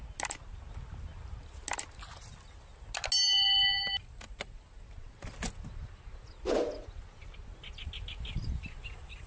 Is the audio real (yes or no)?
yes